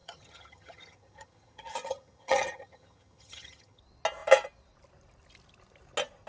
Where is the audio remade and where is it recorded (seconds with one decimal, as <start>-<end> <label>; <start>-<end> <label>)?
0.0-3.8 remade; 3.8-6.3 recorded